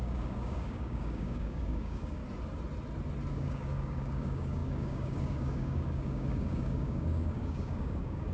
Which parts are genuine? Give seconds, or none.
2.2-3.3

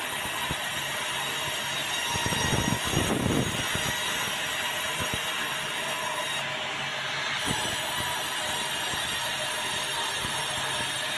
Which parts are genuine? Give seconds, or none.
0.0-11.2

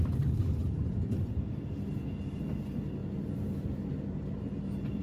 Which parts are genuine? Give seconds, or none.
0.0-0.6; 1.4-3.0

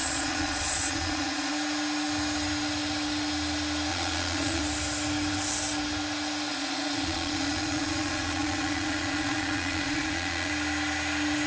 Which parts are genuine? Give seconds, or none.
1.5-3.9; 4.6-6.5; 10.5-11.5